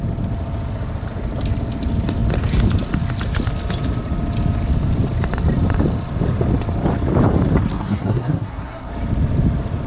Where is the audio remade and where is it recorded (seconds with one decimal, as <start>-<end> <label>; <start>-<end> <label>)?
0.0-7.7 recorded; 7.7-8.9 remade; 8.9-9.9 recorded